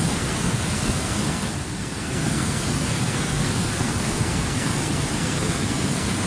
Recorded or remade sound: remade